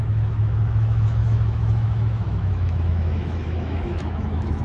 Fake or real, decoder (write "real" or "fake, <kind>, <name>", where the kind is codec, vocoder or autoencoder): fake, autoencoder, DAC-VAE